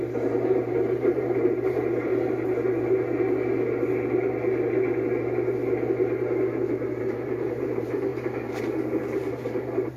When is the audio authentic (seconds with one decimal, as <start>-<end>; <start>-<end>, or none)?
2.1-7.0